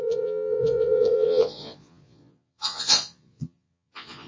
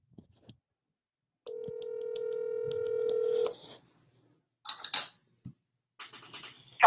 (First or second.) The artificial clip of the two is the first